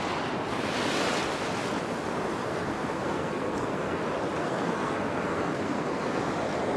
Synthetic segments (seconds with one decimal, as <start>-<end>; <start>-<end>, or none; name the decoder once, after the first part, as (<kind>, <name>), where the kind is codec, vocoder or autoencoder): 2.4-4.0 (codec, SNAC); 4.4-6.2